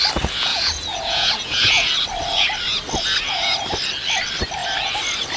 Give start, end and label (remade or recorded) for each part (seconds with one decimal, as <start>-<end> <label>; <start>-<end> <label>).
0.0-0.5 recorded; 0.5-1.9 remade; 1.9-5.4 recorded